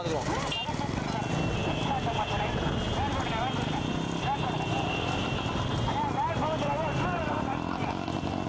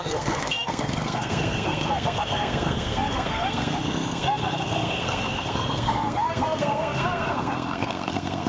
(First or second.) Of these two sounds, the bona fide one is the first